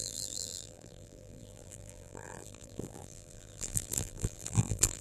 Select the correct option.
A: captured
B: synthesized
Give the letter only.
B